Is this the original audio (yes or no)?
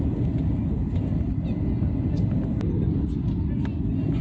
yes